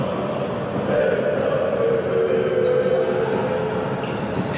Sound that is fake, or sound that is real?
real